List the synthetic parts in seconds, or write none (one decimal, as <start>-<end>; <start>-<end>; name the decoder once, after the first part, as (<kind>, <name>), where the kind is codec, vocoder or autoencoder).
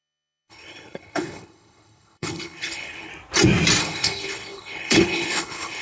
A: 0.0-3.1 (codec, HILCodec); 3.8-5.8